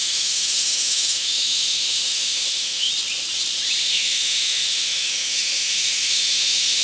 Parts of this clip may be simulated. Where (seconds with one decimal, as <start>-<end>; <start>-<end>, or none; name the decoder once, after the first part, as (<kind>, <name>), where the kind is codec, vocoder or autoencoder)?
0.0-2.9 (autoencoder, DAC-VAE); 3.8-6.8